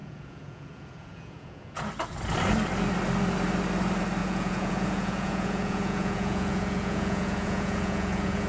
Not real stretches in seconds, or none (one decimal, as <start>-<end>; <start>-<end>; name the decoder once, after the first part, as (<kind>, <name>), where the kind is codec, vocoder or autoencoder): 0.0-1.8 (vocoder, Vocos); 4.2-8.5